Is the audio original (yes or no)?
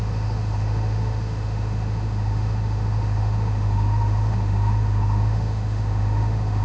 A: no